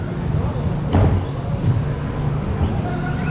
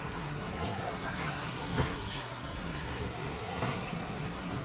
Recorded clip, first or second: first